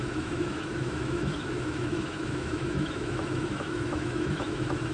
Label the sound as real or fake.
fake